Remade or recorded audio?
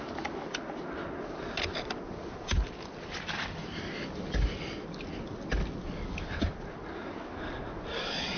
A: recorded